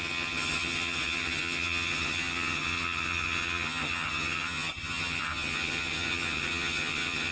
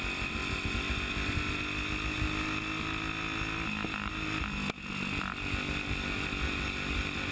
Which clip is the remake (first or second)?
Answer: first